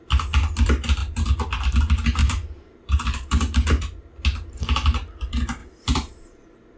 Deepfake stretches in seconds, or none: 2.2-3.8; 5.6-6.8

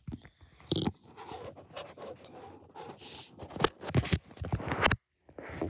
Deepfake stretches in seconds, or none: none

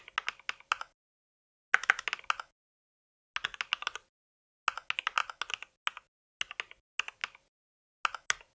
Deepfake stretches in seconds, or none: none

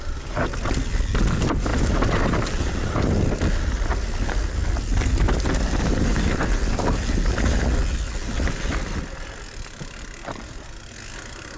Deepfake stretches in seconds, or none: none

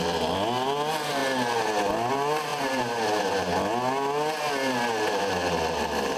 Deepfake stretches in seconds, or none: none